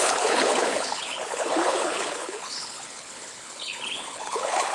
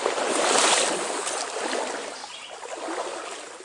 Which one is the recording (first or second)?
second